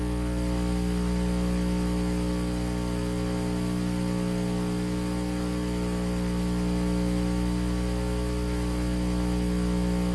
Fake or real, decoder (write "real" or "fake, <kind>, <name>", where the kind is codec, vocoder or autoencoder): real